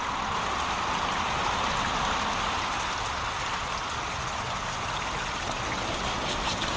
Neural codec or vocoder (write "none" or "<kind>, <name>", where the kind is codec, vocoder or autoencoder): none